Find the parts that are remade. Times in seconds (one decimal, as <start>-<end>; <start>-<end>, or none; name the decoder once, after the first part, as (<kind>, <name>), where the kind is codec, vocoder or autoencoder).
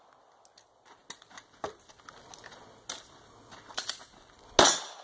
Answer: none